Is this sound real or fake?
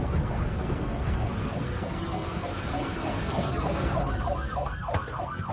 fake